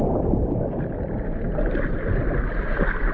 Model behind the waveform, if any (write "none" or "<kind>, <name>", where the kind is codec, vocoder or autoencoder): none